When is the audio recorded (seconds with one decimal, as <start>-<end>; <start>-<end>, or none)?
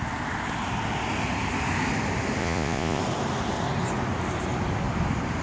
0.0-2.4; 3.0-5.4